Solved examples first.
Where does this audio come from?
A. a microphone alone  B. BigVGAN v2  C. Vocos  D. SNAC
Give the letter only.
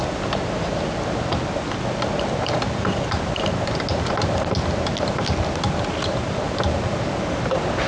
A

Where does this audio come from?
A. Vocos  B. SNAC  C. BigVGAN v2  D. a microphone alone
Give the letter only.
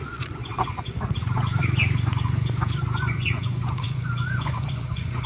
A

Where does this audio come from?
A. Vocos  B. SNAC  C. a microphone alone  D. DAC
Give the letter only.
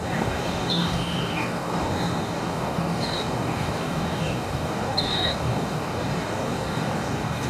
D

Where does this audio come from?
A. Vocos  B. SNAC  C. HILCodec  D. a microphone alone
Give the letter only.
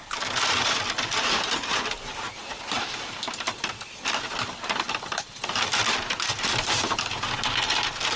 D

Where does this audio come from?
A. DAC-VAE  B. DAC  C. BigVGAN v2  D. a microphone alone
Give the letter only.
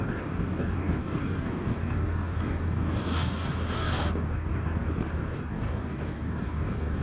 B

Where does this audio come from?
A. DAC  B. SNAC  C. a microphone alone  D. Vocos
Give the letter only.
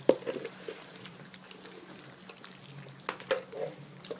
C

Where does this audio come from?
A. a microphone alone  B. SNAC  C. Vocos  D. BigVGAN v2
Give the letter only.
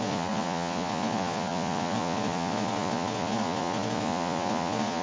C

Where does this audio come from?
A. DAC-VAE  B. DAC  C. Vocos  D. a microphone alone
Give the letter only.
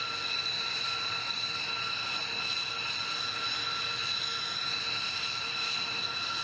D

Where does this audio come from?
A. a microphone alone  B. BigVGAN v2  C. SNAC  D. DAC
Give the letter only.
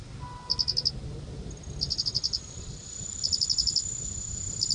A